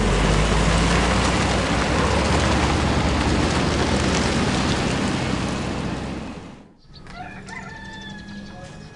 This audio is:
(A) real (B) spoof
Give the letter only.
A